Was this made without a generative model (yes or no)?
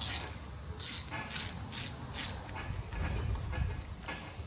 yes